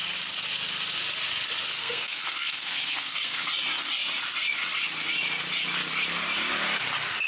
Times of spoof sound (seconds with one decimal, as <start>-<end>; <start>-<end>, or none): 1.8-3.4